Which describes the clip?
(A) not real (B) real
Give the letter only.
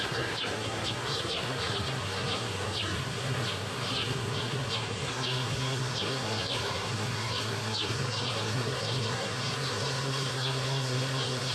A